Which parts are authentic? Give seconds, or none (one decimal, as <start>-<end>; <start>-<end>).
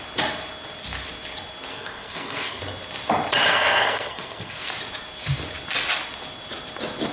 0.0-1.7; 2.6-3.5; 4.7-7.1